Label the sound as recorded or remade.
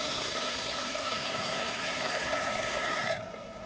remade